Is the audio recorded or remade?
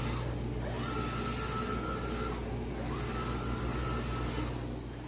recorded